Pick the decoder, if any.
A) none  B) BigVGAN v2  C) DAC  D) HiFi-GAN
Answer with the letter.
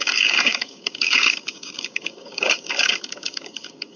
C